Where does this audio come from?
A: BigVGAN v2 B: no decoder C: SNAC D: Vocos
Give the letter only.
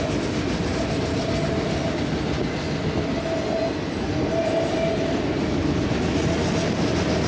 B